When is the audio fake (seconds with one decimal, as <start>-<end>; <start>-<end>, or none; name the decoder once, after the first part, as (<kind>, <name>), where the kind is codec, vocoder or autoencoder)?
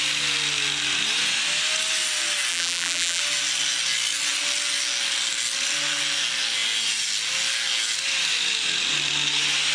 2.5-3.2 (vocoder, BigVGAN v2)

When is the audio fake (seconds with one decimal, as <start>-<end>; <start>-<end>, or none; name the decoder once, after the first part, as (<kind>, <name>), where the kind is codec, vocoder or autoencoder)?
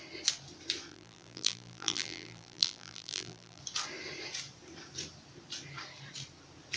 0.9-3.6 (vocoder, BigVGAN v2)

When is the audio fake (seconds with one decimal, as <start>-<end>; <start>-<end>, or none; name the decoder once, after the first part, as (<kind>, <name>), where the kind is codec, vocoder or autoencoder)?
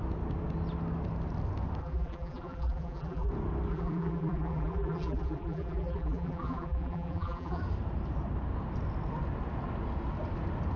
1.8-3.3 (vocoder, BigVGAN v2); 3.7-7.6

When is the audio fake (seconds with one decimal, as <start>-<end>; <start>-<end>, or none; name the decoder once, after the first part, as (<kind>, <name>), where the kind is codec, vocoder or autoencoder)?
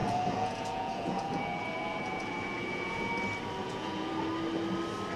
0.0-3.1 (vocoder, Vocos); 3.6-4.1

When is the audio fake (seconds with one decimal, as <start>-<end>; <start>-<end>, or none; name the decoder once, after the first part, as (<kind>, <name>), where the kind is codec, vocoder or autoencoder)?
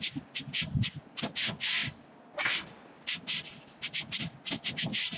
1.8-5.2 (vocoder, BigVGAN v2)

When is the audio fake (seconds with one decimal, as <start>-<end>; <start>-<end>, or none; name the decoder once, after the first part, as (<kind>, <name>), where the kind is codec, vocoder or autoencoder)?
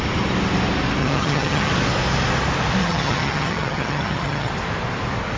1.0-1.7 (vocoder, HiFi-GAN); 2.8-4.5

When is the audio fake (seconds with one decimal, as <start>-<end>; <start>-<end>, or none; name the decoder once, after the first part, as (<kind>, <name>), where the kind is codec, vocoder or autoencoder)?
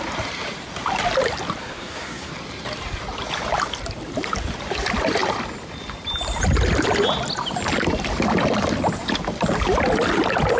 1.6-2.3 (codec, SNAC)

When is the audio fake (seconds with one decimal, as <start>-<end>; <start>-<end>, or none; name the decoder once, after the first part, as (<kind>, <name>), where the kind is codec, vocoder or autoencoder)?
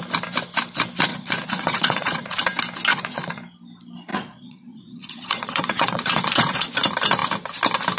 1.1-2.4 (vocoder, Vocos); 2.9-3.4; 4.1-6.7